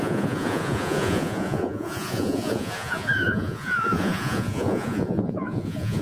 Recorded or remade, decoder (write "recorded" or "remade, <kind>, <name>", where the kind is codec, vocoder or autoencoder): remade, vocoder, Vocos